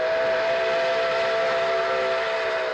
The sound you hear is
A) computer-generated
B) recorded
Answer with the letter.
B